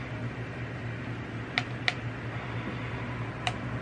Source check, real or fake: real